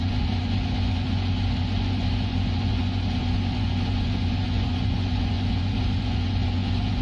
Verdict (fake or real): fake